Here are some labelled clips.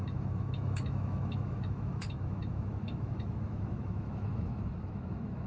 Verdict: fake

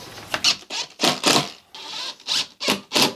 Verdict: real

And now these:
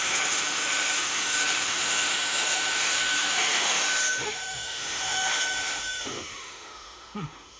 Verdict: fake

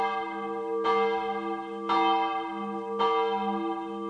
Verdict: real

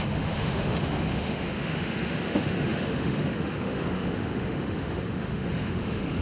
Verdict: fake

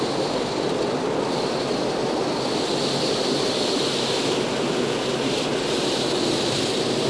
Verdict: real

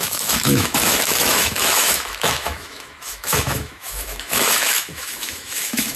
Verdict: fake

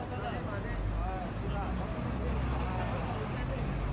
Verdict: real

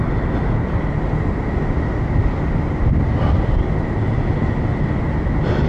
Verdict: real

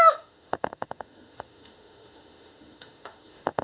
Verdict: fake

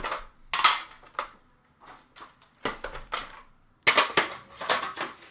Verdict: real